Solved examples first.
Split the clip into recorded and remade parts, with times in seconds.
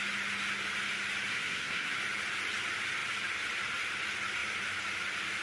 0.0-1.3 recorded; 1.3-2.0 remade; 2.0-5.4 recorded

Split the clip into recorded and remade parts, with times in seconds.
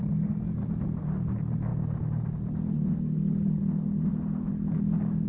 0.0-5.3 recorded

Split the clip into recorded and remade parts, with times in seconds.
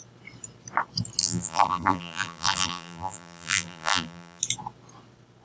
0.0-1.2 recorded; 1.2-4.4 remade; 4.4-5.4 recorded